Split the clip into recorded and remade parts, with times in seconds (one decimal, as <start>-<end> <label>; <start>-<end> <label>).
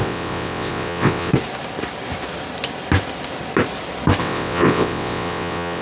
0.0-1.3 remade; 1.3-4.2 recorded; 4.2-5.8 remade